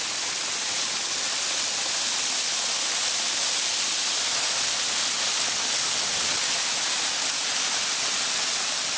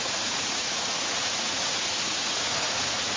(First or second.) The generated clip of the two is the second